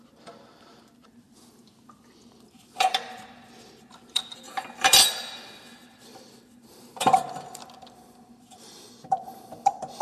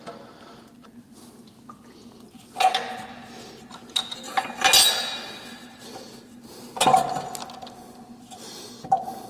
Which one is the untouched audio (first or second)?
second